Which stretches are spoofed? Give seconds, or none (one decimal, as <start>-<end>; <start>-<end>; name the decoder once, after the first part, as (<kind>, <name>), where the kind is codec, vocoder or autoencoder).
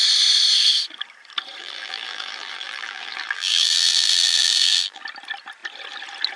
1.6-5.0 (vocoder, BigVGAN v2)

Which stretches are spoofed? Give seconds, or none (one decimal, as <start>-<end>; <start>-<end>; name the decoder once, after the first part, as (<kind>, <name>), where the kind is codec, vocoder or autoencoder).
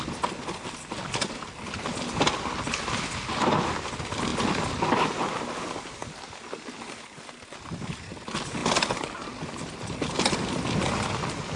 none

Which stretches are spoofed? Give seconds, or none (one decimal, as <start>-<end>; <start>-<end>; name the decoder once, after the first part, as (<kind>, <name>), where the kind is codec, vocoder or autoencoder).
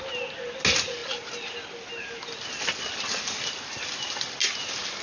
none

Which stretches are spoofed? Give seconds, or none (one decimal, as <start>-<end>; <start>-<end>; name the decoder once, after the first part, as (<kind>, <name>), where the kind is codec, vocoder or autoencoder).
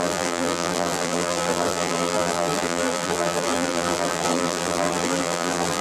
0.0-5.8 (vocoder, BigVGAN v2)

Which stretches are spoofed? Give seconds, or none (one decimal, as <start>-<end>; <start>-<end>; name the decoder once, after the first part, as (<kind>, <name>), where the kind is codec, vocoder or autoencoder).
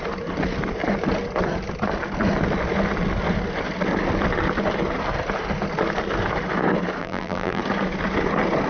7.0-7.6 (vocoder, BigVGAN v2)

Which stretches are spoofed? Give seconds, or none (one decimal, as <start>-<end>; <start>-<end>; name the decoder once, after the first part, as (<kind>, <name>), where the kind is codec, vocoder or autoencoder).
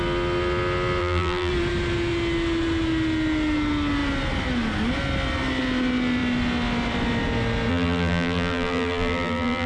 1.0-1.5 (vocoder, BigVGAN v2); 7.7-9.7